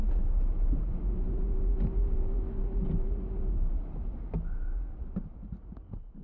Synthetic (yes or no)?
no